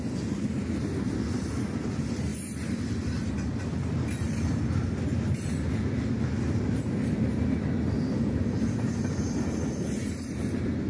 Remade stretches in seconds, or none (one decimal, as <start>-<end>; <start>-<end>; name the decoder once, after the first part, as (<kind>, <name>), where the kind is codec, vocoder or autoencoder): 0.0-0.6 (vocoder, BigVGAN v2); 1.4-2.3; 3.3-4.5; 9.2-10.9